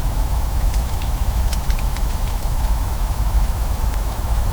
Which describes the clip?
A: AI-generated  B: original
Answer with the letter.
A